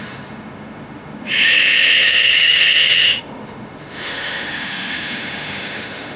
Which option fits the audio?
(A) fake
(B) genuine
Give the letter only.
A